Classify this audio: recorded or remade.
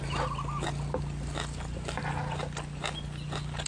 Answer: recorded